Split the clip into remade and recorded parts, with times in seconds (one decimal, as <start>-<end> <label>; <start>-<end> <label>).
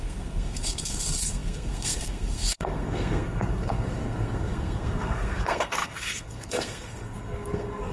0.0-7.9 remade